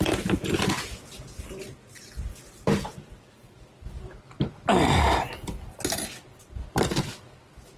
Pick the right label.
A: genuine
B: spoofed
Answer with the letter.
A